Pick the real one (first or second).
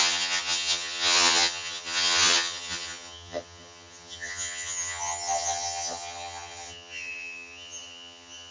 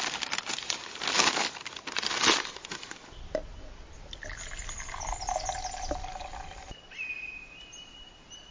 second